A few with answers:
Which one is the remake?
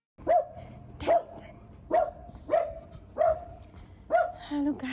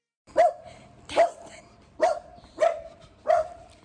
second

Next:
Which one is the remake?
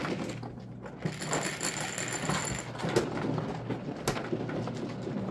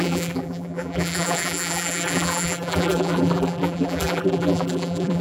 second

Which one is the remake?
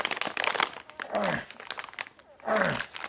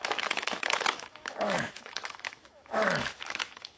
second